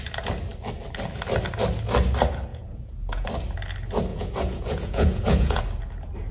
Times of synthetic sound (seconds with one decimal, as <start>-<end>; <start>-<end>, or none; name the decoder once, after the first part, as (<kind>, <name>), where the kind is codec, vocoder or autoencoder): 2.5-3.3 (vocoder, Vocos); 4.1-5.6